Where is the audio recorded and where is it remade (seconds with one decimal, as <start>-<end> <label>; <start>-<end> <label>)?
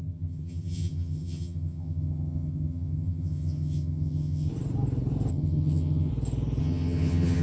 0.0-4.5 remade; 4.5-5.3 recorded; 5.3-6.1 remade; 6.1-6.6 recorded; 6.6-7.4 remade